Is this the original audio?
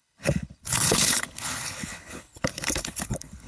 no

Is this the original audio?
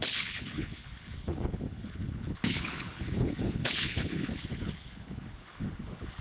no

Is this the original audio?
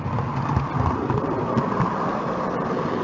yes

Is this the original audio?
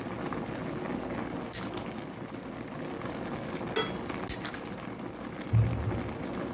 yes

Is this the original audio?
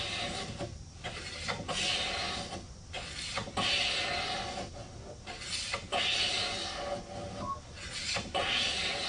yes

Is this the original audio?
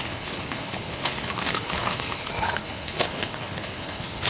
no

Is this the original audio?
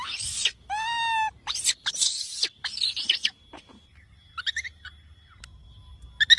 yes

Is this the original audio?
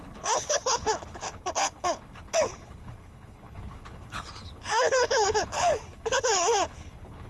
no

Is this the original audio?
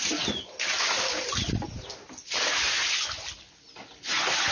yes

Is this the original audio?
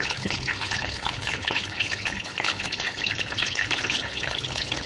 no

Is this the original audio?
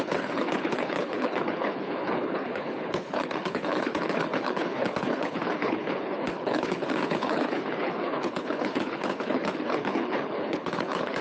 no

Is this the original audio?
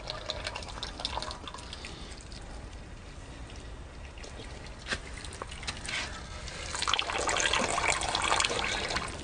yes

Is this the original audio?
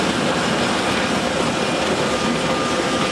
yes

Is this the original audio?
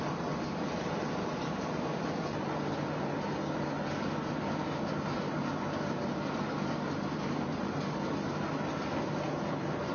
yes